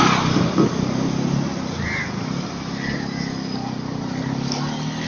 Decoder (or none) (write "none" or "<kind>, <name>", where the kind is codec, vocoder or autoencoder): none